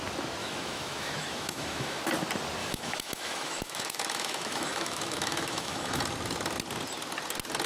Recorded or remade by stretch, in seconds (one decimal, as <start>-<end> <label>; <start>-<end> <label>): 0.0-0.4 recorded; 0.4-2.0 remade; 2.0-2.6 recorded; 2.6-6.0 remade; 6.0-7.7 recorded